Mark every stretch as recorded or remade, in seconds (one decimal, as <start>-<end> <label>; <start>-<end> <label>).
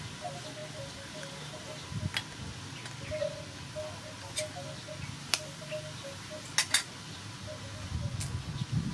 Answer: 0.0-8.9 recorded